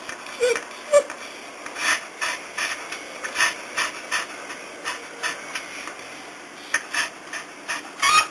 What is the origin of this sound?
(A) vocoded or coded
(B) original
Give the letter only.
B